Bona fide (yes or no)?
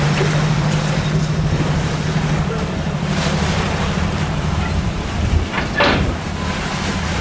no